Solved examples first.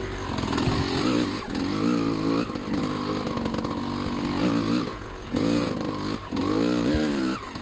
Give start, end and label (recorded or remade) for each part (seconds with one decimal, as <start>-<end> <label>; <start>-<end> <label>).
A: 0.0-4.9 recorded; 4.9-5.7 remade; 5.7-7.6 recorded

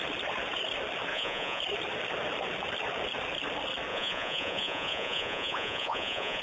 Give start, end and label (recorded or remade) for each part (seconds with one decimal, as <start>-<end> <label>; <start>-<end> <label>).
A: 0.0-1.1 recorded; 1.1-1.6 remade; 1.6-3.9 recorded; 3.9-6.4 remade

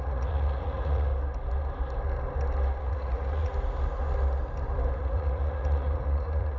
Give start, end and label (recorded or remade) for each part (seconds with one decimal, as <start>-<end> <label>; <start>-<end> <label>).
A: 0.0-1.1 remade; 1.1-2.8 recorded; 2.8-3.5 remade; 3.5-5.0 recorded; 5.0-6.6 remade